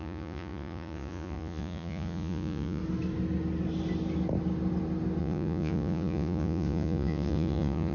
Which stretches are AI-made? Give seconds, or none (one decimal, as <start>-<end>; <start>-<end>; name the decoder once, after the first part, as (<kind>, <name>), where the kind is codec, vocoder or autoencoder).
0.0-2.8 (vocoder, Vocos); 5.2-7.9

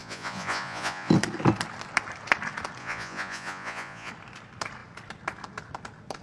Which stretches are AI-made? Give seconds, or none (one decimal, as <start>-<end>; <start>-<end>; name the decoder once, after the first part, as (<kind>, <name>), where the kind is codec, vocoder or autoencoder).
0.0-1.1 (vocoder, Vocos); 2.8-4.1

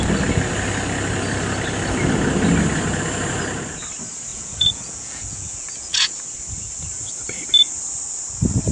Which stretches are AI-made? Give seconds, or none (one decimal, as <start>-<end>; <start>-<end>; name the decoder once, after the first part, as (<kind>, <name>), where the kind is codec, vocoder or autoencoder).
4.3-6.2 (vocoder, Vocos)